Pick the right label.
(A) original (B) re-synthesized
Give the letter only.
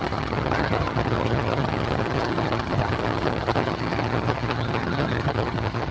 B